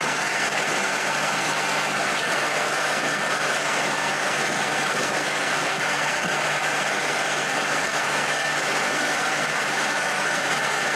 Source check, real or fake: fake